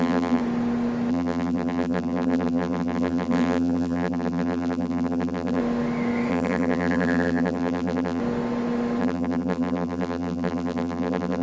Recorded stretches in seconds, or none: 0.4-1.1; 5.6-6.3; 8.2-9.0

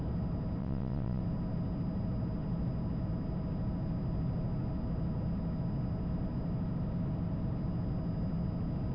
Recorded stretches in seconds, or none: 0.0-0.6; 1.2-8.9

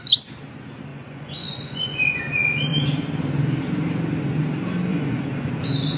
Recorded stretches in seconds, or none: 0.0-0.9; 2.2-4.9; 5.5-6.0

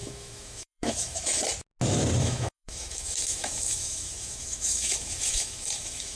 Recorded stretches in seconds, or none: 1.4-2.2

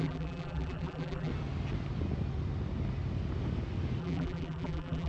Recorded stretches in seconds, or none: 1.3-4.0

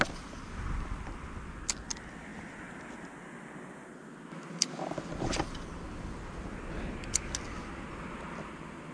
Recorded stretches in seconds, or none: 0.0-8.9